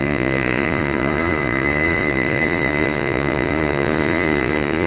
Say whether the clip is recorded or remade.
remade